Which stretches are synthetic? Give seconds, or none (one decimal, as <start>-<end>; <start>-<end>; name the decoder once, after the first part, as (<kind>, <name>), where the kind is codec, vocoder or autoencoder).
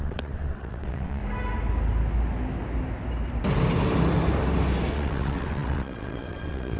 0.0-1.2 (vocoder, WaveNeXt); 4.9-6.8